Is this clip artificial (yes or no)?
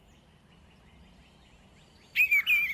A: no